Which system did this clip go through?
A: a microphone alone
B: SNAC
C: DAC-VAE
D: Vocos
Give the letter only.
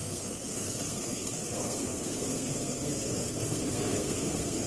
B